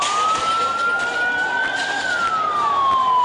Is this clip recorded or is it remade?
recorded